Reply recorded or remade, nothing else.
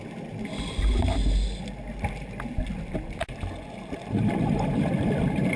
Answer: recorded